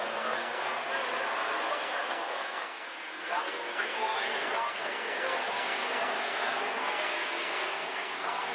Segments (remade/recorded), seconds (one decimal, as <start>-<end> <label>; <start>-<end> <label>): 0.0-0.8 remade; 0.8-1.7 recorded; 1.7-8.5 remade